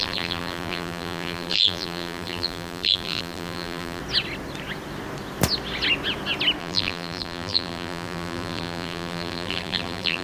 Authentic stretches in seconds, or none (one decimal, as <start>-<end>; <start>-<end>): 4.0-6.6